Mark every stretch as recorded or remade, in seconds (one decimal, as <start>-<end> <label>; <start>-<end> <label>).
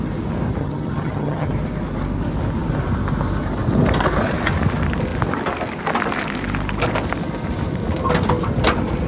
0.0-0.6 recorded; 0.6-1.5 remade; 1.5-9.1 recorded